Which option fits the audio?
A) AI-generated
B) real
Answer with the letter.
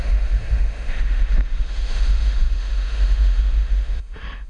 A